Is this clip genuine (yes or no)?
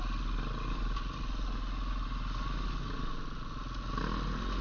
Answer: yes